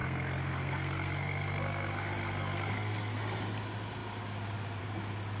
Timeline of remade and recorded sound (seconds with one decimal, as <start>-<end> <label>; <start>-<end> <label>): 0.0-3.2 remade; 3.2-5.4 recorded